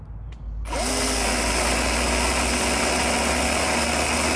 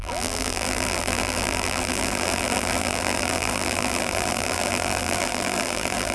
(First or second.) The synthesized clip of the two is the second